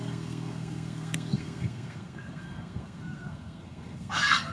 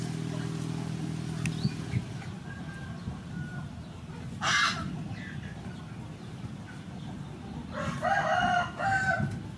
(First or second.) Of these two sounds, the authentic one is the second